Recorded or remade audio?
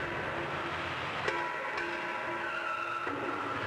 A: recorded